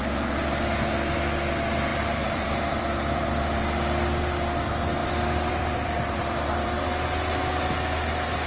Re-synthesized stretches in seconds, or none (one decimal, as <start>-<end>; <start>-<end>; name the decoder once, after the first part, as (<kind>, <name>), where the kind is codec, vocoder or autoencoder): 1.9-3.6 (vocoder, BigVGAN v2); 5.0-6.8

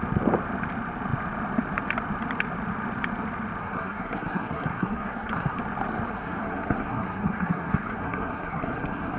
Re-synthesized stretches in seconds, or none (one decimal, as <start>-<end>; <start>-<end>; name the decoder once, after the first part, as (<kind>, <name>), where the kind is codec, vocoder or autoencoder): 3.6-5.6 (codec, SNAC); 6.1-9.2